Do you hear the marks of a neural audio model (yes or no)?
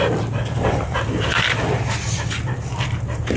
no